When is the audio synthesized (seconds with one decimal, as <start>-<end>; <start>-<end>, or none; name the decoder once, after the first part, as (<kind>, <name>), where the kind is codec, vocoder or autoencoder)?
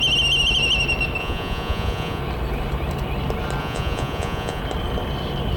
1.2-2.2 (vocoder, Vocos); 3.6-4.6